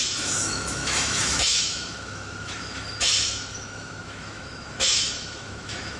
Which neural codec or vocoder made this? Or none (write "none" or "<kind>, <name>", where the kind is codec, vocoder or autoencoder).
autoencoder, DAC-VAE